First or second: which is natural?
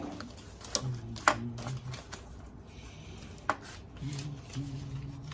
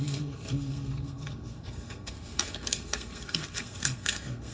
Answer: first